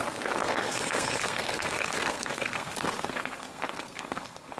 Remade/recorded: remade